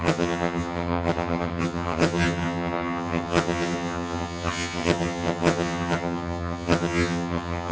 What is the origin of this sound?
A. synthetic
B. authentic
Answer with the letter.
A